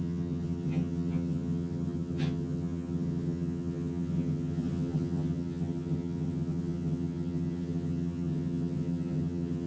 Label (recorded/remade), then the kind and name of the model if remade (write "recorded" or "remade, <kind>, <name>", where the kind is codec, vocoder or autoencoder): remade, vocoder, HiFi-GAN